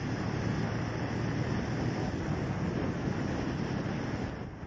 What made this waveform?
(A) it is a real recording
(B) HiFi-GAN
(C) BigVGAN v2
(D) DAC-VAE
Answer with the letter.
A